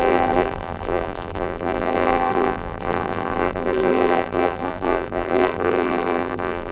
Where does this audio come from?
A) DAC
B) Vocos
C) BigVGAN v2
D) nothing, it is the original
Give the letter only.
C